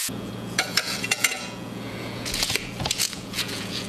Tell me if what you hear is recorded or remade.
remade